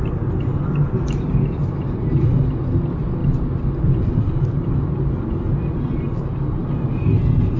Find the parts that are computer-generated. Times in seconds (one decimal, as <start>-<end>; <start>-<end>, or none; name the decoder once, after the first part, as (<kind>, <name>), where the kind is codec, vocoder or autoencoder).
1.6-2.4 (vocoder, BigVGAN v2); 3.2-4.7